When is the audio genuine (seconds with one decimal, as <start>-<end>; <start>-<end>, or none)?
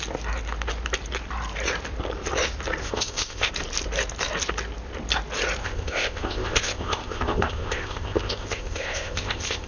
0.0-2.8; 3.5-5.6